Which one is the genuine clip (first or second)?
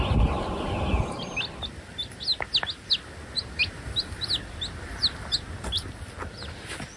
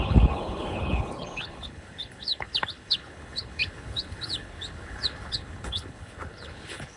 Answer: first